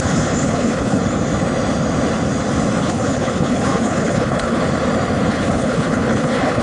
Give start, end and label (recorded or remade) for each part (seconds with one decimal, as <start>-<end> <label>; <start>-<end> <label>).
0.0-1.0 remade; 1.0-2.8 recorded; 2.8-4.6 remade; 4.6-5.3 recorded; 5.3-6.6 remade